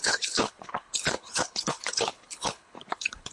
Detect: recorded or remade remade